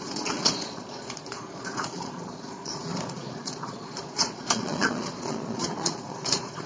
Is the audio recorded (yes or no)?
no